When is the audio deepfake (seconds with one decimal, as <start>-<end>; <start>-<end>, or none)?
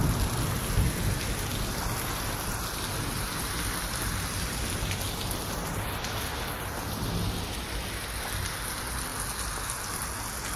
none